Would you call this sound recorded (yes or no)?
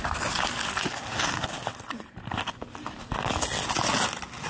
yes